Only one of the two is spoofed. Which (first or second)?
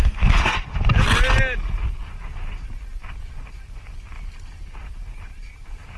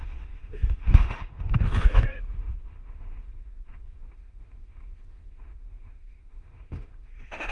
second